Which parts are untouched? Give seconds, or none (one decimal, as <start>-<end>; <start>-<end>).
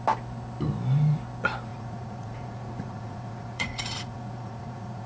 0.0-1.7